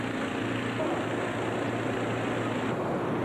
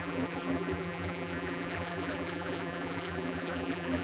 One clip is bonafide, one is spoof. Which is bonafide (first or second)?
first